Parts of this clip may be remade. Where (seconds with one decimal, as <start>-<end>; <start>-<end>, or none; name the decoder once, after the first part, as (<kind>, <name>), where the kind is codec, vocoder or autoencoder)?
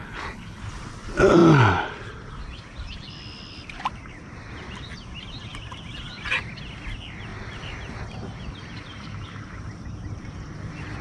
0.0-0.6 (codec, HILCodec)